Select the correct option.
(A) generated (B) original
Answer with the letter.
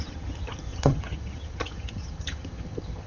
A